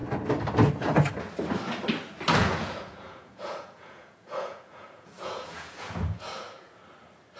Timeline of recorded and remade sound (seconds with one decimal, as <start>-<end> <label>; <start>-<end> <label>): 0.0-2.4 recorded; 2.4-6.8 remade; 6.8-7.4 recorded